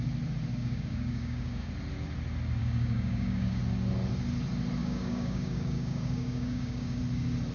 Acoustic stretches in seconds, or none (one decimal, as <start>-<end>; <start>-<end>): 0.0-0.5; 1.7-2.6; 3.6-4.8; 7.0-7.5